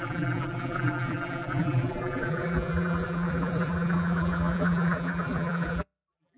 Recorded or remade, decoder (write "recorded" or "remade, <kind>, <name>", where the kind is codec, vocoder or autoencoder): remade, vocoder, BigVGAN v2